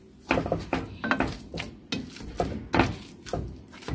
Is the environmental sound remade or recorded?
recorded